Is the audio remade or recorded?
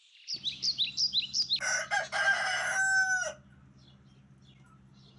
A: recorded